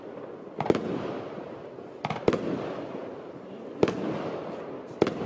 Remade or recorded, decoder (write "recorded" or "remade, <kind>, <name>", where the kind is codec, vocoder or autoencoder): recorded